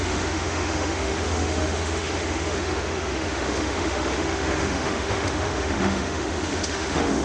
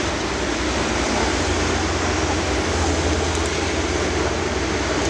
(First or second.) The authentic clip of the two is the second